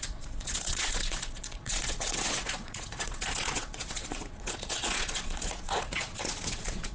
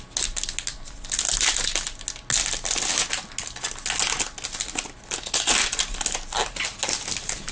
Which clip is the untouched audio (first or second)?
second